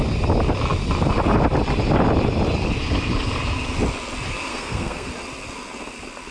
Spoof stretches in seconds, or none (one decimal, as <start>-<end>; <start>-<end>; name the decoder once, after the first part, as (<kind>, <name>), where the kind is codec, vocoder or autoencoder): 4.5-5.1 (codec, SNAC)